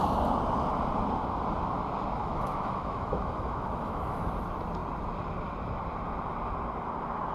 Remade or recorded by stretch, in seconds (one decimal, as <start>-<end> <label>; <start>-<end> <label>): 0.0-2.2 recorded; 2.2-4.3 remade; 4.3-7.3 recorded